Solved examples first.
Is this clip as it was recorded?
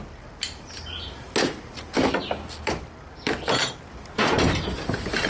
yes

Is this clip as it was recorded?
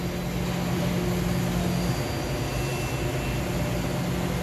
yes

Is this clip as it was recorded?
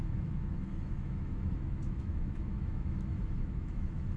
no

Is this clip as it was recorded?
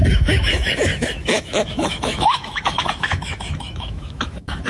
no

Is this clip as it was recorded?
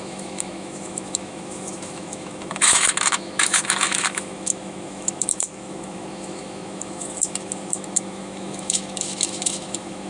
no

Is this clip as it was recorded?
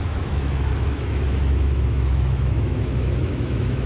no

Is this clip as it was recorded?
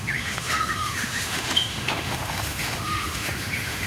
no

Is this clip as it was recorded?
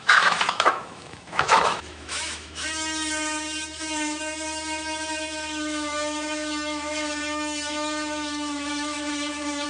no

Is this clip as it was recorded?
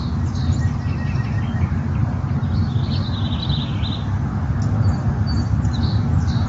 yes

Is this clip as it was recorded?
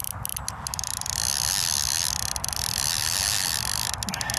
yes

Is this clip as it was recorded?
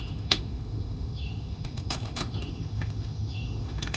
no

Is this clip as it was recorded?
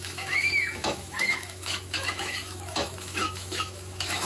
no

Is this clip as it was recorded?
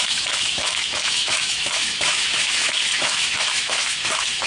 no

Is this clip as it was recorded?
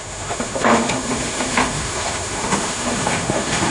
no